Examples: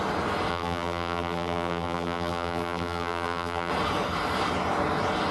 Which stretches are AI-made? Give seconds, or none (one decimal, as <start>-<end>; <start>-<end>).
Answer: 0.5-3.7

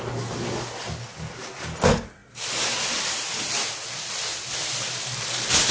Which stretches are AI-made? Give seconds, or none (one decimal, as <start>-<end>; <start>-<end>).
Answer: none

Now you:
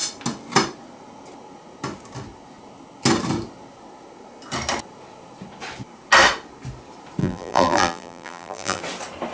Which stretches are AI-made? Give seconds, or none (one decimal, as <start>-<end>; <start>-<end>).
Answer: 7.2-8.8